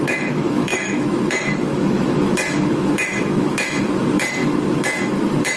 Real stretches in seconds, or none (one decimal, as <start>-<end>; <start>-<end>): none